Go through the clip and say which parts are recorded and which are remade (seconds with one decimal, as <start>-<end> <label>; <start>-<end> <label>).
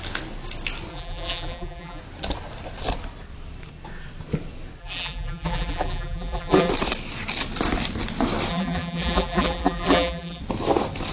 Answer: 0.0-0.9 recorded; 0.9-2.0 remade; 2.0-4.8 recorded; 4.8-6.7 remade; 6.7-8.5 recorded; 8.5-10.4 remade; 10.4-11.1 recorded